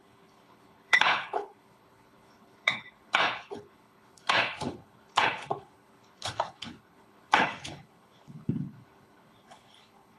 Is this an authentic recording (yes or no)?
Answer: no